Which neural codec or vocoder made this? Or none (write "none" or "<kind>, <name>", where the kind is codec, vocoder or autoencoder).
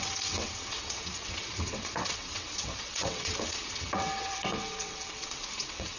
vocoder, WaveNeXt